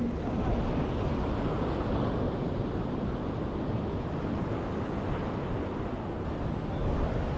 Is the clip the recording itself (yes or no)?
yes